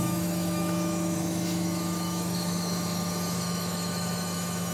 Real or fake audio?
fake